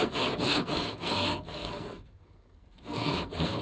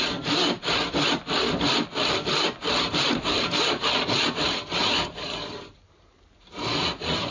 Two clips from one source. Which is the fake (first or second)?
first